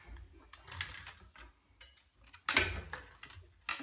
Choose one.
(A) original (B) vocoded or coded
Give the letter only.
A